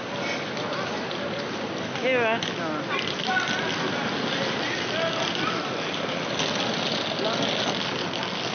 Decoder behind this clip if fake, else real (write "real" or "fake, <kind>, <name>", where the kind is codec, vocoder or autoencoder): real